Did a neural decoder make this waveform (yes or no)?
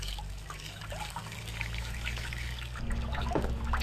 yes